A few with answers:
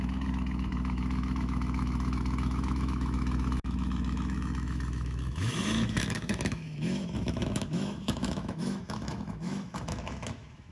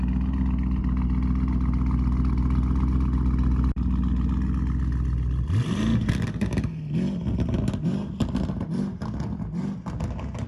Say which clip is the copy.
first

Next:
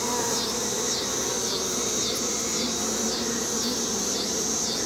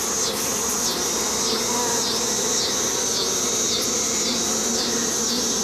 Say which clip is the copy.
first